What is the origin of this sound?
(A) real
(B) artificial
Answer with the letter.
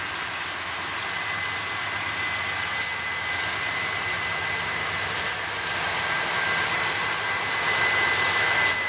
A